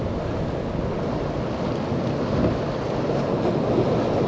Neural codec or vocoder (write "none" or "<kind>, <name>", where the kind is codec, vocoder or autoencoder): none